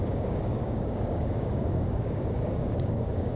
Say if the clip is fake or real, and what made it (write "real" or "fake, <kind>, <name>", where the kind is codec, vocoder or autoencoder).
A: fake, codec, DAC